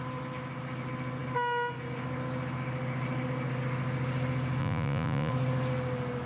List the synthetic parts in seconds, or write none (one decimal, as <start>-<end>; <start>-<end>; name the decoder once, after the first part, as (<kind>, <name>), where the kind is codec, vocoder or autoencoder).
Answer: 4.6-5.3 (vocoder, Vocos)